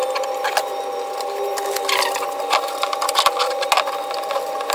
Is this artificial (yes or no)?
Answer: no